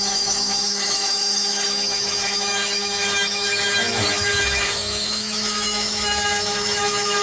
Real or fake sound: fake